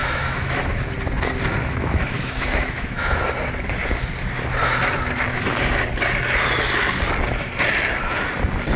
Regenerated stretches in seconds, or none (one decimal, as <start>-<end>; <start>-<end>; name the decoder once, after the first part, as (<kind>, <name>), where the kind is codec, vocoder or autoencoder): 0.0-0.9 (autoencoder, DAC-VAE); 1.6-3.2